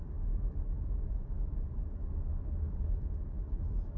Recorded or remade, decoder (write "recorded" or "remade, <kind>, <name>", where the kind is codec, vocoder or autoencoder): recorded